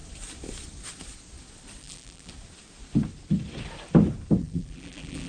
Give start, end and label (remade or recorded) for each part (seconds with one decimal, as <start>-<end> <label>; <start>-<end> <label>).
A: 0.0-1.8 recorded; 1.8-2.3 remade; 2.3-4.4 recorded; 4.4-5.3 remade